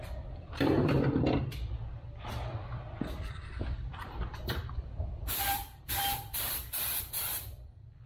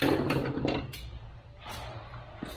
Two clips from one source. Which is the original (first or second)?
second